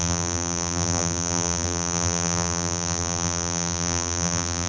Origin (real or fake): fake